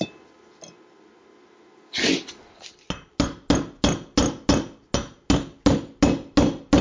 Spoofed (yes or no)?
no